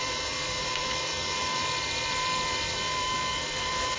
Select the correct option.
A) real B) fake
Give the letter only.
B